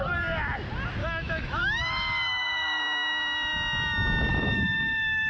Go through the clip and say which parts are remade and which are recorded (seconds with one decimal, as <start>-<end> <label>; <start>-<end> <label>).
0.0-1.0 recorded; 1.0-2.8 remade; 2.8-4.3 recorded; 4.3-5.3 remade